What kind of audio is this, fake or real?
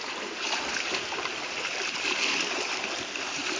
fake